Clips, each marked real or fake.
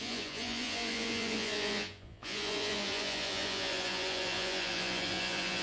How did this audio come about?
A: fake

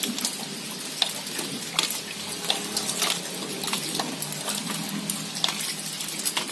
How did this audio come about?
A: real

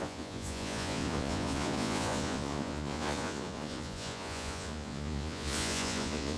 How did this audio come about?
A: fake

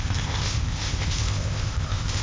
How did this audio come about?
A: fake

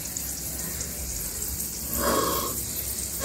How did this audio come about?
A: real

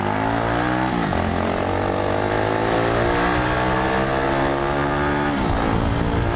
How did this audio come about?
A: real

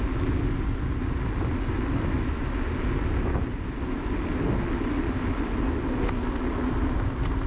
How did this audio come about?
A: real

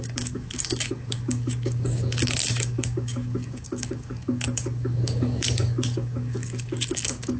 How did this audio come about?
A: fake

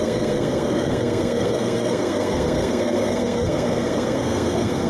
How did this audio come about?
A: fake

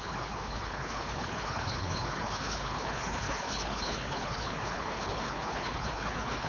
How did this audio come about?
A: fake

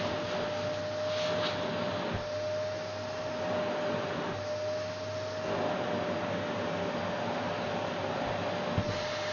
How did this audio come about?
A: real